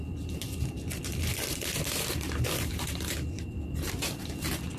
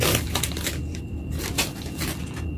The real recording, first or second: second